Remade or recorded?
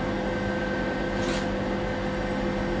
recorded